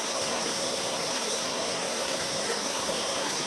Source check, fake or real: fake